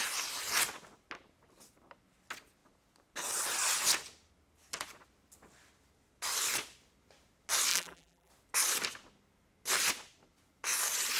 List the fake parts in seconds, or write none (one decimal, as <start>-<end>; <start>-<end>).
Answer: 7.7-8.3